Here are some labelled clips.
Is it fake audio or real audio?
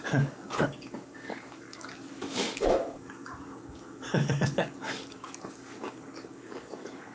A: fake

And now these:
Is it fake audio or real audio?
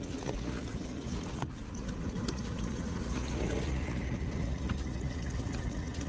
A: fake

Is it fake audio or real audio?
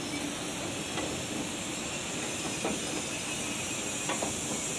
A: real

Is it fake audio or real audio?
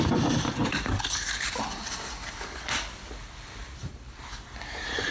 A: fake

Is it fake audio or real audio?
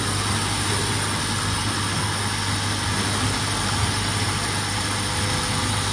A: real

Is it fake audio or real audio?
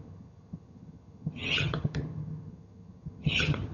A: fake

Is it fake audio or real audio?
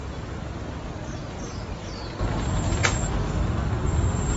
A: real